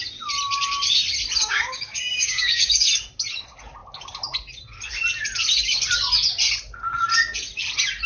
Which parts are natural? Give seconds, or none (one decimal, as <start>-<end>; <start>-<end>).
0.0-1.4; 2.9-8.1